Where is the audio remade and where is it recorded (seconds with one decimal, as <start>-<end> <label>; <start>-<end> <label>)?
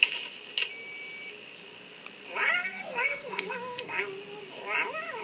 0.0-2.6 recorded; 2.6-4.0 remade; 4.0-5.2 recorded